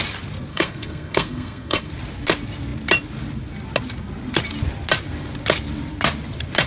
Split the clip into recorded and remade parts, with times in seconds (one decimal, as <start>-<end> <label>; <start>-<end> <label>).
0.0-0.5 recorded; 0.5-1.9 remade; 1.9-6.7 recorded